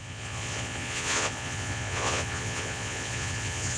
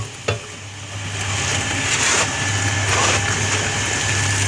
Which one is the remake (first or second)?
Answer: first